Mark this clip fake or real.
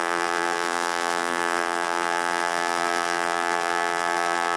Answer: fake